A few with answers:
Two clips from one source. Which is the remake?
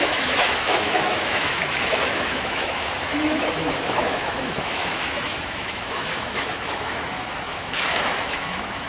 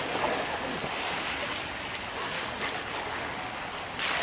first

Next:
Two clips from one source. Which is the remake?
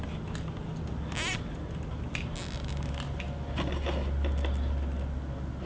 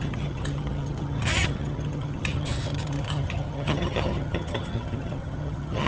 second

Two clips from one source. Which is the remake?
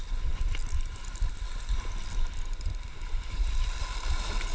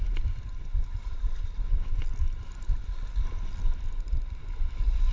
first